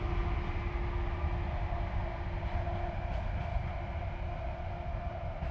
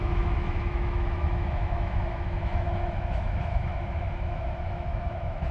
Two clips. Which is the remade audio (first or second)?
second